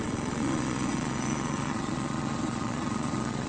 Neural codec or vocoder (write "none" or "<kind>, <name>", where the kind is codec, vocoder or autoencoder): vocoder, Vocos